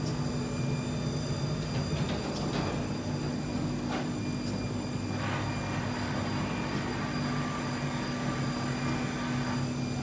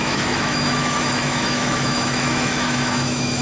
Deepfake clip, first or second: second